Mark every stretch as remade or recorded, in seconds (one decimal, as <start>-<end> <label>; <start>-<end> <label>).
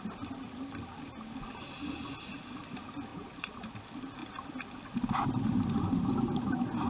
0.0-3.1 recorded; 3.1-3.8 remade; 3.8-6.9 recorded